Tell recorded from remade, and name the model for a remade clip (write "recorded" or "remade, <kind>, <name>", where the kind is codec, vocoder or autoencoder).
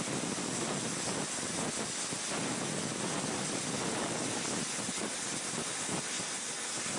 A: recorded